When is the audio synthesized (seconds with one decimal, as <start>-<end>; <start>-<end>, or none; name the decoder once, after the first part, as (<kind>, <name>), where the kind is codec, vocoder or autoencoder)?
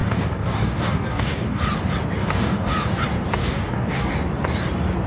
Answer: 0.0-1.6 (codec, DAC); 2.2-2.7; 3.4-4.1